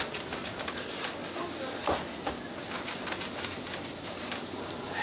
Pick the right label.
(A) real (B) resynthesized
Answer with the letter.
A